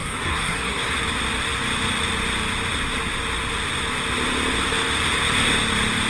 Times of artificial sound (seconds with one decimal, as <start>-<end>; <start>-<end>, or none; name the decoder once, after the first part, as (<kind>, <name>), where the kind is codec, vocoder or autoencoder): 0.0-0.9 (codec, SNAC)

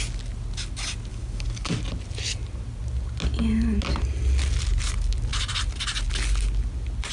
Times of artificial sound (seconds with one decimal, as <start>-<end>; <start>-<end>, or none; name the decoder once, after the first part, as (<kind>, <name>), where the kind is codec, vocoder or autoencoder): 1.1-1.8 (codec, DAC)

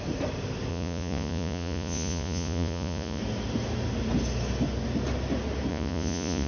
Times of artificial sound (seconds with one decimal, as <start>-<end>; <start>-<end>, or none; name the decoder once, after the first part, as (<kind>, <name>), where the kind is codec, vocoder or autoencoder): 0.7-3.2 (vocoder, Vocos); 5.7-6.5

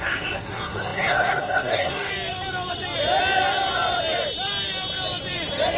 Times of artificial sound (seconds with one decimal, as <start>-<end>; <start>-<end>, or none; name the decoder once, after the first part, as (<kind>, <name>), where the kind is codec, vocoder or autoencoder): 0.0-2.1 (codec, SNAC)

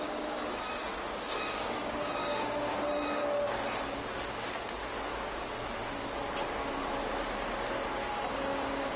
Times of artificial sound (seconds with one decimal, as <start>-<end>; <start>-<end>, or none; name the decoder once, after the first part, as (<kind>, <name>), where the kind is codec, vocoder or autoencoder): 0.0-3.2 (codec, DAC); 8.1-9.0

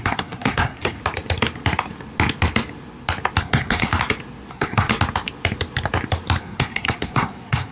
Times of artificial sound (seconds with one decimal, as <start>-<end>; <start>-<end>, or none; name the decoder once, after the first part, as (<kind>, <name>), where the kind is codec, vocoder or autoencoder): 0.0-1.0 (codec, SNAC); 3.4-3.9; 4.5-4.9; 6.4-7.7